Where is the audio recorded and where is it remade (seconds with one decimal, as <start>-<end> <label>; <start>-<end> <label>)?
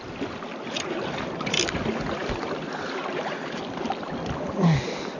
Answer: 0.0-5.2 recorded